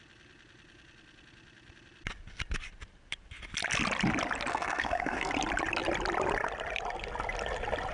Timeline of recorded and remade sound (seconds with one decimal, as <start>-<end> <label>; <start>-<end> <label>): 0.0-4.5 recorded; 4.5-5.3 remade; 5.3-7.9 recorded